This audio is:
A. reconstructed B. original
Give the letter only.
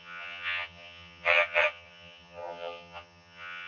A